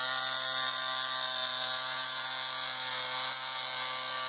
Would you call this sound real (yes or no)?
yes